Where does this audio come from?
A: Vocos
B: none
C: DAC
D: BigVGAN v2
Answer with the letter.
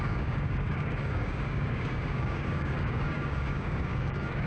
C